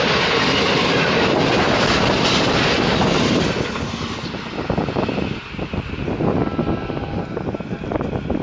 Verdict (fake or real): real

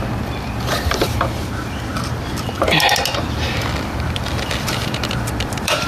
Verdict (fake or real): fake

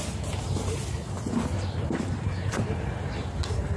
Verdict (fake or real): real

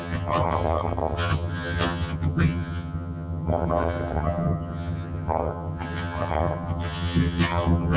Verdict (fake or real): fake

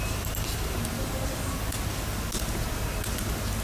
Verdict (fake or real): real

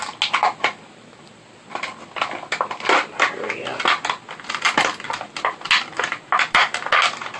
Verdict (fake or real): real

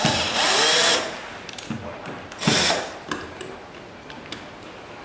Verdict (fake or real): real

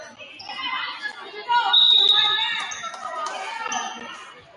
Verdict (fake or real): real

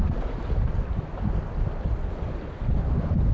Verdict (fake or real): real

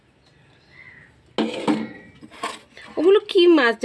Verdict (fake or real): real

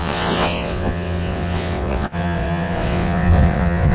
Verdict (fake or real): fake